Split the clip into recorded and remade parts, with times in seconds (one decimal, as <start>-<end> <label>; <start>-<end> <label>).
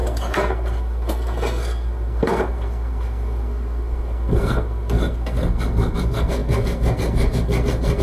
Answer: 0.0-8.0 remade